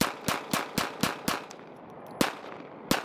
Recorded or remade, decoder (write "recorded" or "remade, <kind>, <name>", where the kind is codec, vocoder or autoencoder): recorded